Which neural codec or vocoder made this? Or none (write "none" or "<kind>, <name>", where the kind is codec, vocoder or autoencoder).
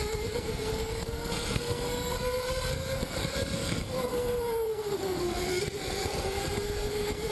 codec, SNAC